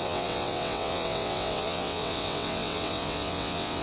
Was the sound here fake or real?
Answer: fake